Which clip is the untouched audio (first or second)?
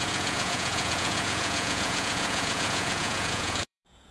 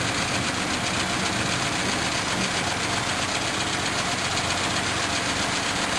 second